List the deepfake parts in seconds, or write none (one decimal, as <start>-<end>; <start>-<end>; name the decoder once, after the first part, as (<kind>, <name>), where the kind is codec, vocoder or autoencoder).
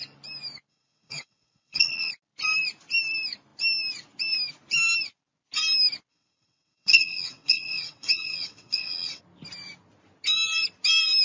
0.7-2.1 (vocoder, WaveNeXt); 6.1-9.2